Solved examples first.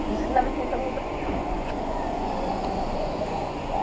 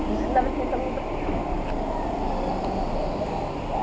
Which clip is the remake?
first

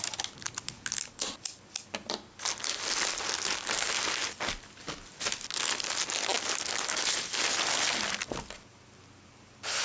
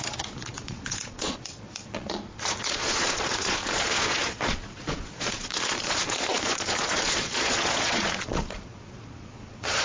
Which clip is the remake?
second